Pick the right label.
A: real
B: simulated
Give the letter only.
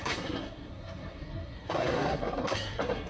B